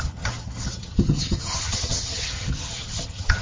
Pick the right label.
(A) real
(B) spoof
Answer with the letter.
B